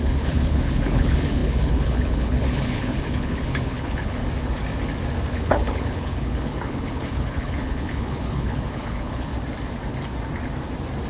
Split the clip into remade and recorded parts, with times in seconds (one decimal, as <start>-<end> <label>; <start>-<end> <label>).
0.0-4.2 remade; 4.2-5.3 recorded; 5.3-9.3 remade; 9.3-11.1 recorded